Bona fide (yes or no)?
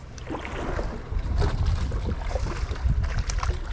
yes